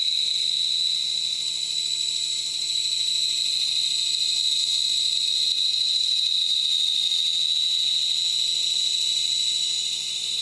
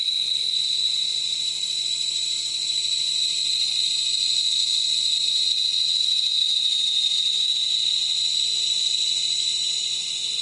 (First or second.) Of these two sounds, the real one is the first